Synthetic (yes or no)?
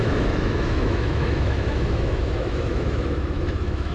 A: yes